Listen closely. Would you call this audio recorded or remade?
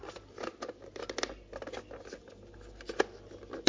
recorded